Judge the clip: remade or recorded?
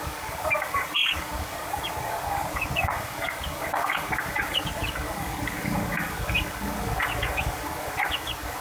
remade